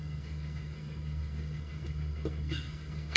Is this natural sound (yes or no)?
no